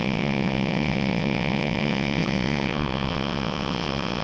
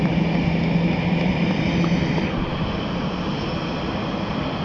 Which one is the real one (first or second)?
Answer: second